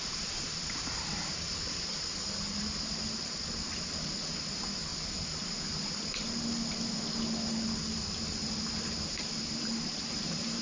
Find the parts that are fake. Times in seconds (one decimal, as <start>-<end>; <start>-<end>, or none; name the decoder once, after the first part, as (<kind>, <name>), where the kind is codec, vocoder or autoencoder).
0.0-1.9 (vocoder, BigVGAN v2); 8.0-10.6